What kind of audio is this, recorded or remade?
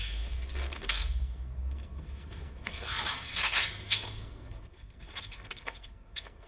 remade